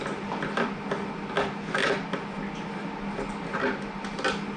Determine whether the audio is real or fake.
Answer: real